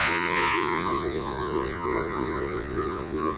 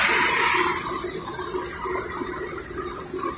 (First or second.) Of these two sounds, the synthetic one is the first